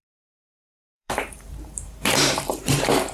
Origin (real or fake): fake